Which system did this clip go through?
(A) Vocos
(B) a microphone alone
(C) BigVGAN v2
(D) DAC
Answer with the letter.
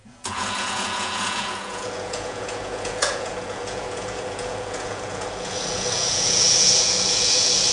A